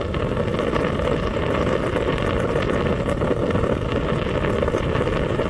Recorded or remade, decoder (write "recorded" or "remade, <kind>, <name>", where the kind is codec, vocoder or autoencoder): recorded